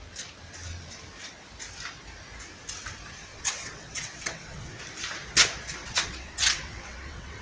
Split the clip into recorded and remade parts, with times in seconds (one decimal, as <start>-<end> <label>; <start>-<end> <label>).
0.0-3.3 recorded; 3.3-4.8 remade; 4.8-5.8 recorded; 5.8-7.4 remade